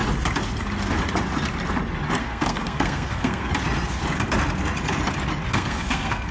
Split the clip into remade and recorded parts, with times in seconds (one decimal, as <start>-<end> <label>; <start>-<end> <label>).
0.0-2.2 recorded; 2.2-3.5 remade; 3.5-5.5 recorded; 5.5-6.3 remade

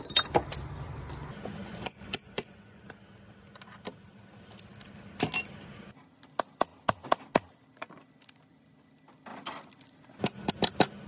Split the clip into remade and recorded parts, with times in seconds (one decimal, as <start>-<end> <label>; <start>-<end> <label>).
0.0-1.6 recorded; 1.6-2.8 remade; 2.8-11.1 recorded

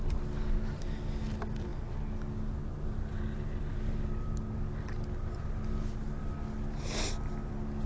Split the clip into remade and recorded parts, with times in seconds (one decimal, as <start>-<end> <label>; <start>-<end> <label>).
0.0-7.9 recorded

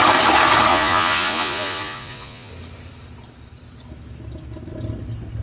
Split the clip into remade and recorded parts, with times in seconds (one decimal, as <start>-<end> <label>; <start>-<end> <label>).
0.0-0.7 recorded; 0.7-2.5 remade; 2.5-5.4 recorded

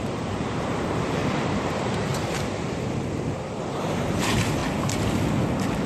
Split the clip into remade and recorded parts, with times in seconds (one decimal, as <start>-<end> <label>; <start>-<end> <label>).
0.0-1.2 remade; 1.2-1.7 recorded; 1.7-2.1 remade; 2.1-4.0 recorded; 4.0-4.6 remade; 4.6-5.9 recorded

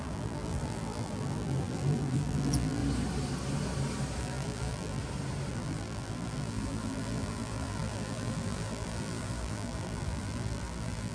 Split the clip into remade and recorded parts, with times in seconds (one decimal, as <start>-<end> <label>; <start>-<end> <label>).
0.0-2.8 remade; 2.8-4.2 recorded; 4.2-5.0 remade; 5.0-5.5 recorded; 5.5-11.1 remade

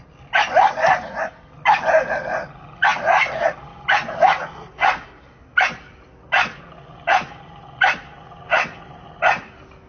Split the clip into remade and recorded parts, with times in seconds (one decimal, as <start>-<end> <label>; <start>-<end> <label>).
0.0-9.9 recorded

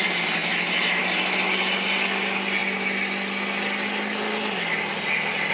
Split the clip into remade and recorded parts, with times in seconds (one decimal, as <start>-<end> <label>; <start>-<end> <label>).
0.0-5.5 recorded